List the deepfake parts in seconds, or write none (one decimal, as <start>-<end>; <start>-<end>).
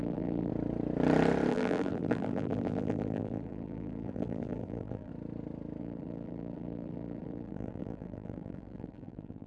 0.0-0.5; 1.5-5.1; 5.8-9.5